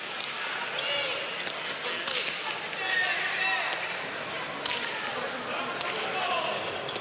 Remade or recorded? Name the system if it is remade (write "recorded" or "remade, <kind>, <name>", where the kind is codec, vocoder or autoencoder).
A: recorded